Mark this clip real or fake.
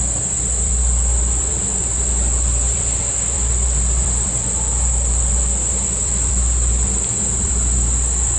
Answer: fake